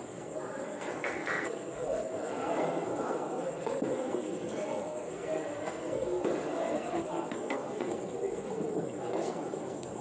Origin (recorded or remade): remade